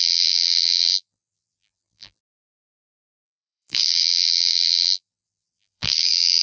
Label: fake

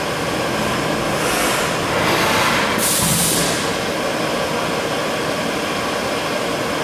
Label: real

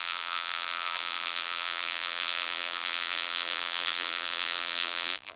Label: fake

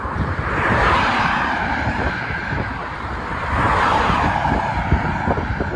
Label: fake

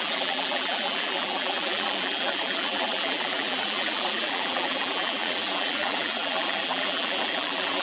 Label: fake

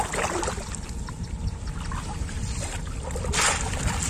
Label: real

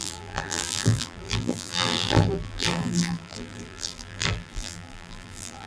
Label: fake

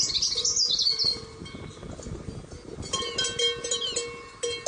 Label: real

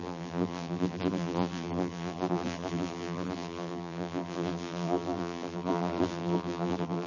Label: fake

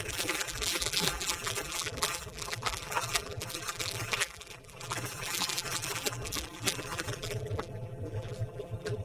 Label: fake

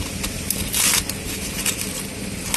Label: real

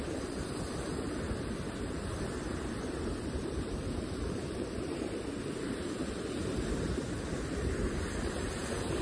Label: fake